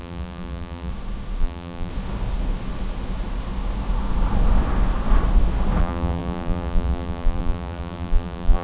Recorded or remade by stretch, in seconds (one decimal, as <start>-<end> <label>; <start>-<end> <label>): 0.0-0.9 remade; 0.9-1.4 recorded; 1.4-1.9 remade; 1.9-5.8 recorded; 5.8-8.6 remade